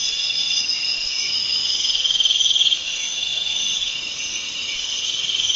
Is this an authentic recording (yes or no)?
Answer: no